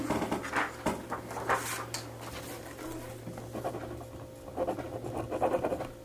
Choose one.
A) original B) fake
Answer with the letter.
A